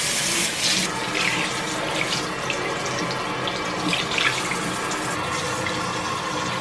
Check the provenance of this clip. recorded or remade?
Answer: recorded